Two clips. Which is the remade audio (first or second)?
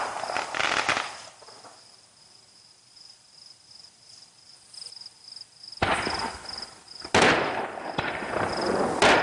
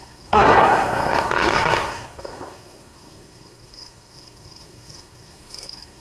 second